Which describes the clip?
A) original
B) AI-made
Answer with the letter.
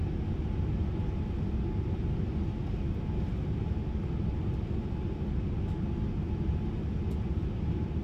A